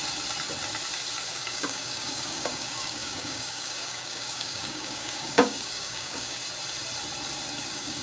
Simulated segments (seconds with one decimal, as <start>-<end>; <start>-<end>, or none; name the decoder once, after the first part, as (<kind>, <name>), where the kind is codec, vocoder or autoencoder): 1.3-6.4 (codec, DAC); 7.6-8.0